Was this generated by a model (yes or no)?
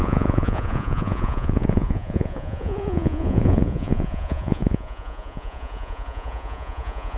yes